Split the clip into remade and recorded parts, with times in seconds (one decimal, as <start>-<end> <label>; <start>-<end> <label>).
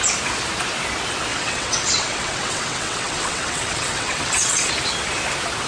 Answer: 0.0-1.3 recorded; 1.3-4.7 remade; 4.7-5.7 recorded